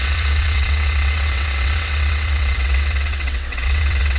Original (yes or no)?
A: no